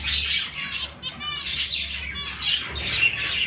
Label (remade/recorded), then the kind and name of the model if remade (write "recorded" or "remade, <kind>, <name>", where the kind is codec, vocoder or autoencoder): recorded